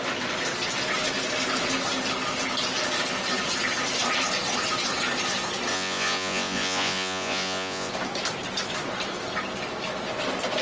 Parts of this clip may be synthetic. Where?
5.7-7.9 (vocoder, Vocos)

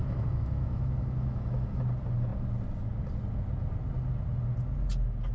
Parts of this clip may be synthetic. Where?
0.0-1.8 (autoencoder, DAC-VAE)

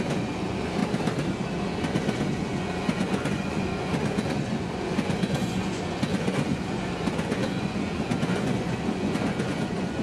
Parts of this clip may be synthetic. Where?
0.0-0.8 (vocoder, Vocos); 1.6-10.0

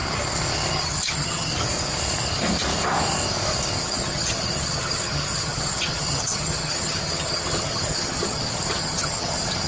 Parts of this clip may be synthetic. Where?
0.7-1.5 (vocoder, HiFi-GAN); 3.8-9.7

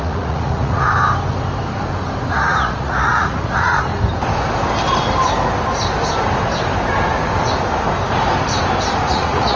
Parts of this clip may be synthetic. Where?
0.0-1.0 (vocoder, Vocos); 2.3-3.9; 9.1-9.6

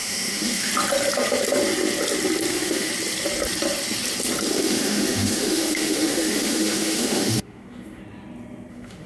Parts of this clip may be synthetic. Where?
0.0-0.7 (autoencoder, DAC-VAE); 2.5-2.9; 4.5-8.0; 8.7-9.1